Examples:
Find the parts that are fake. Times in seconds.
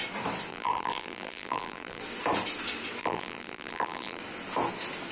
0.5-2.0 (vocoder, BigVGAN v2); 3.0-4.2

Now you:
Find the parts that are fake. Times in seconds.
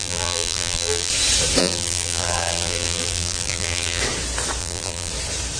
0.0-1.1 (vocoder, BigVGAN v2); 1.6-4.0; 4.6-5.1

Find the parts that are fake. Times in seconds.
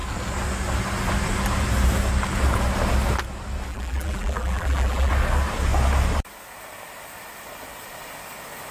3.7-5.1 (vocoder, BigVGAN v2)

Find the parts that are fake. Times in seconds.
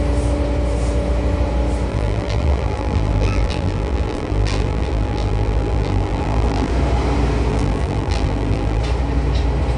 1.9-6.7 (vocoder, BigVGAN v2); 7.5-8.8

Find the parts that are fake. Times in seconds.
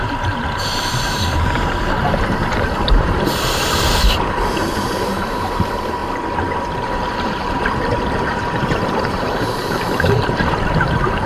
0.0-6.0 (vocoder, BigVGAN v2); 6.5-11.3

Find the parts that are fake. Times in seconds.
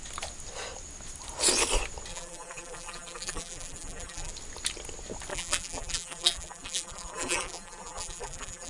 2.1-4.3 (vocoder, BigVGAN v2); 5.3-8.7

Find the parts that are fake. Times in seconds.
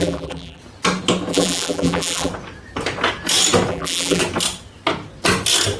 0.0-0.6 (vocoder, BigVGAN v2); 1.3-2.3; 3.7-4.2